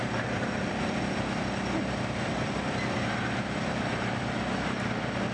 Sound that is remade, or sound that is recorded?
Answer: recorded